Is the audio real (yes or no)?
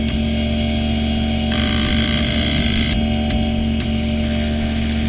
yes